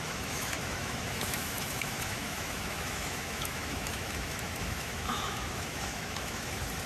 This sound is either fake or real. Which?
fake